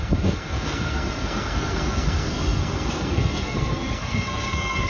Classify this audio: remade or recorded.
remade